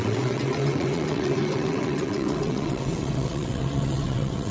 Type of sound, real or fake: fake